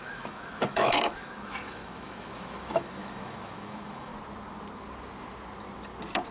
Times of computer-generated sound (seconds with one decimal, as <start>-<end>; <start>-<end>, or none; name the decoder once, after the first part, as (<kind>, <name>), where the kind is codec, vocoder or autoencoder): 0.0-4.1 (autoencoder, DAC-VAE)